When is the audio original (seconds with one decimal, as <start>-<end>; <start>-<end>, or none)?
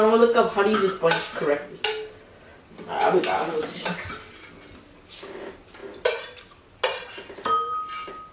0.0-8.3